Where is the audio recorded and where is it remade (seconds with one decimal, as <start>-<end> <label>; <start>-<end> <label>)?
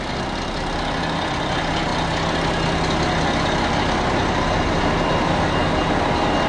0.0-6.5 recorded